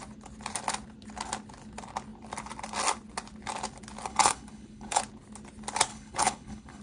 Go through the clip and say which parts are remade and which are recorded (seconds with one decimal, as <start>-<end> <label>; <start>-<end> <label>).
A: 0.0-4.1 recorded; 4.1-5.0 remade; 5.0-5.9 recorded; 5.9-6.8 remade